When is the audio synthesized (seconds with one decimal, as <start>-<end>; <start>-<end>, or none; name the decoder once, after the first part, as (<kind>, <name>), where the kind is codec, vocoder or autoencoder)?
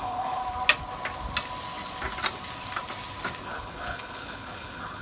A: 0.0-0.4 (codec, HILCodec); 3.4-5.0